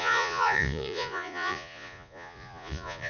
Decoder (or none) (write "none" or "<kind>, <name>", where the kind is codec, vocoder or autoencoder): vocoder, Vocos